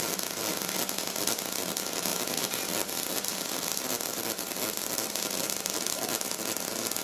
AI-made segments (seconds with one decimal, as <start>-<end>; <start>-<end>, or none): 2.1-6.3

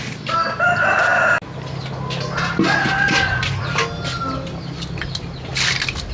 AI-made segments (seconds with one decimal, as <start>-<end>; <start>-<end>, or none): none

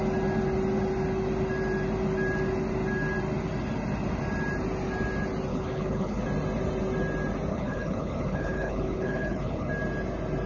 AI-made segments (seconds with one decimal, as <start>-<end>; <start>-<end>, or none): 5.5-6.2; 7.5-9.7

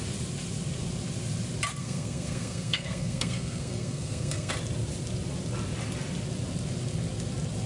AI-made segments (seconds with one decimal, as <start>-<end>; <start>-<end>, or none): 1.8-4.5

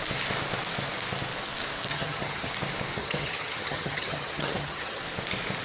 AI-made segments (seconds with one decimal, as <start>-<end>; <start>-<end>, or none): 1.9-2.5; 3.0-5.0

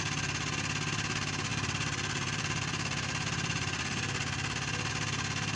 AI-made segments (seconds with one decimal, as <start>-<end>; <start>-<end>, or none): 1.5-4.9